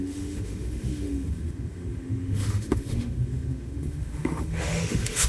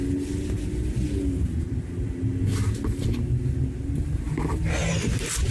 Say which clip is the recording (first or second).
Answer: second